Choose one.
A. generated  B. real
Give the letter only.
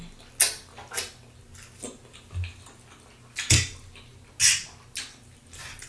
B